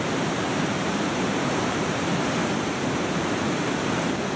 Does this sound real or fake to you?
fake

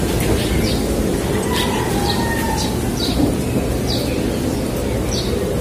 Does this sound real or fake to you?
real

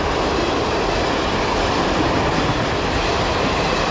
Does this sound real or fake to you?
fake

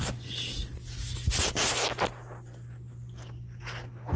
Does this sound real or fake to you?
real